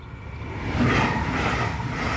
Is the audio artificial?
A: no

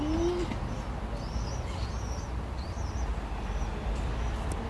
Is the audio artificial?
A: no